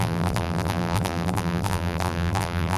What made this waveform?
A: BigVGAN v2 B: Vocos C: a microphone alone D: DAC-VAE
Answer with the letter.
A